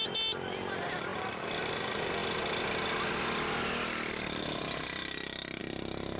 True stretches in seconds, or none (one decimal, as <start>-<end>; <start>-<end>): 0.0-6.2